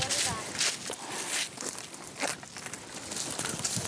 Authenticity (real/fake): real